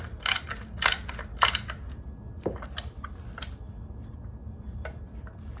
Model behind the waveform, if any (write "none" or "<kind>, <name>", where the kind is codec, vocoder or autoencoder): none